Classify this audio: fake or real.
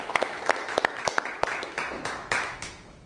fake